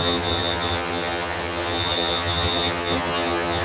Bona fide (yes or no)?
no